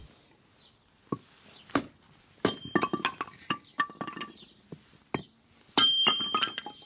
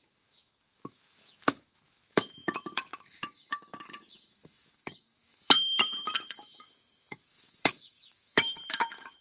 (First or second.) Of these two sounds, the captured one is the first